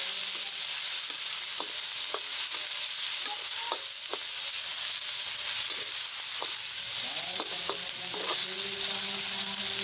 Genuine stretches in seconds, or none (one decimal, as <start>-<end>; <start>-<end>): 0.0-9.8